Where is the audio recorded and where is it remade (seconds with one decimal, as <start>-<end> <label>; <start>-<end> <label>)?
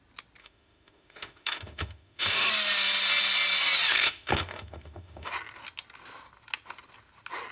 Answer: 0.0-0.4 recorded; 0.4-2.5 remade; 2.5-3.9 recorded; 3.9-5.3 remade; 5.3-7.5 recorded